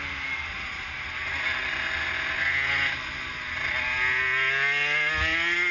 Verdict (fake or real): real